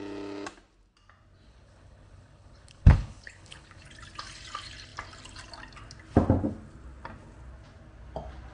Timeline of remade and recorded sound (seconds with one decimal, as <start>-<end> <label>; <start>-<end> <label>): 0.0-1.5 recorded; 1.5-3.8 remade; 3.8-8.5 recorded